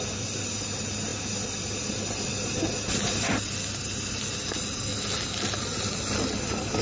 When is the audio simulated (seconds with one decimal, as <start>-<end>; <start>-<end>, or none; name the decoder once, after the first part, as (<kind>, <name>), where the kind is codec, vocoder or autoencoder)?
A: none